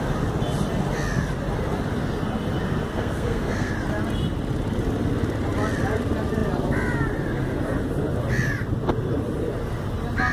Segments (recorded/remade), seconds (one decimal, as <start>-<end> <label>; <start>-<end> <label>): 0.0-2.9 recorded; 2.9-3.7 remade; 3.7-10.3 recorded